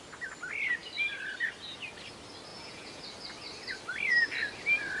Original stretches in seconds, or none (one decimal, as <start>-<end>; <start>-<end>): 0.0-2.5; 3.0-5.0